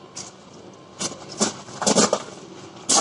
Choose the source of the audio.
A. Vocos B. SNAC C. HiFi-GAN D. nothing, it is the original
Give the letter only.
D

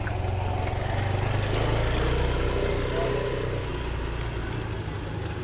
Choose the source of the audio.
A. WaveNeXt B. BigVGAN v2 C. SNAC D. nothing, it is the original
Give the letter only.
D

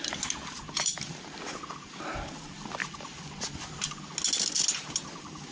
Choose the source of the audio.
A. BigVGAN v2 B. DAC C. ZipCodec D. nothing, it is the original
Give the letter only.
D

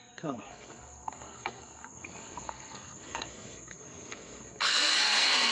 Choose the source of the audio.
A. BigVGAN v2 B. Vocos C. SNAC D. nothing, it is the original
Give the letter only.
C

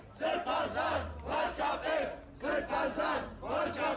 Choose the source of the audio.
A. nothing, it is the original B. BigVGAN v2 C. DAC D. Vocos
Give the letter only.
A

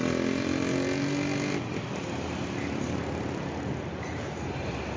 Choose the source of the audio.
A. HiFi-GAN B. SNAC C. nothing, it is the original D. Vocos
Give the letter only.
C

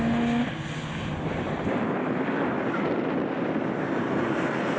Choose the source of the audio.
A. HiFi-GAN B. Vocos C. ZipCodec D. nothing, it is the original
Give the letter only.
D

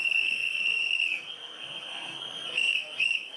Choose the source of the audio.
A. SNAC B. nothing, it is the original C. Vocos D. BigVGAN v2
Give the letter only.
A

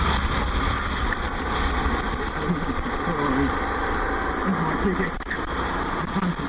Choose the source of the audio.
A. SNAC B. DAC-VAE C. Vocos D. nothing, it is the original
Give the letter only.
D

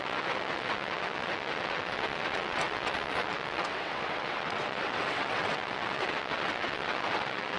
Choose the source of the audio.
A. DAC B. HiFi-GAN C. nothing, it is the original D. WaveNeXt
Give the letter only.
D